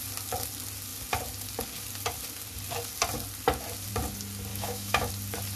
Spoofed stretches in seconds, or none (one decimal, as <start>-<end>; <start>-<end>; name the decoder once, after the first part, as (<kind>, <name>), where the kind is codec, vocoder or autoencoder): 4.5-5.1 (autoencoder, DAC-VAE)